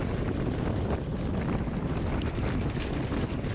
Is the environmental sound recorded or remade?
recorded